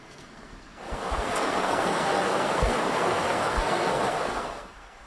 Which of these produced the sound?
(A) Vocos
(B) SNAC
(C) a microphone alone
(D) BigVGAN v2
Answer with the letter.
B